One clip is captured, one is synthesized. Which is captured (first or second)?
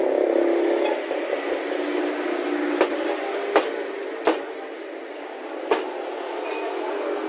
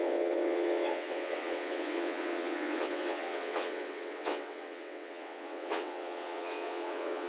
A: first